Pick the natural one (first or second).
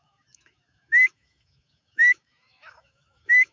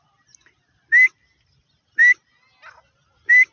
second